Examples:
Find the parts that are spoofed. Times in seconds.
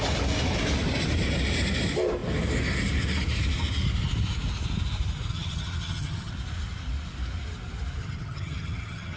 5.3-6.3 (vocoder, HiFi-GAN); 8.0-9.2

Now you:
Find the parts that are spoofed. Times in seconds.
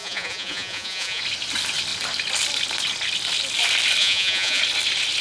0.0-1.2 (vocoder, Vocos); 4.0-4.6